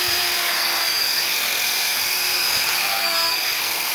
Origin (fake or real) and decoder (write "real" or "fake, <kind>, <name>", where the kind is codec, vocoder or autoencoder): fake, codec, SNAC